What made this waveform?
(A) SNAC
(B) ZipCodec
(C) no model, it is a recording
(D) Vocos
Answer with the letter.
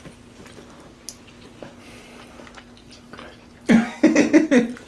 C